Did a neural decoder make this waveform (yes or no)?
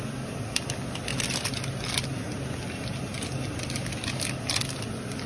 no